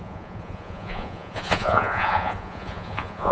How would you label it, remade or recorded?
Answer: remade